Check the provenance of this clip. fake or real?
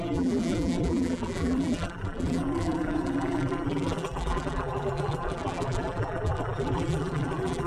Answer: fake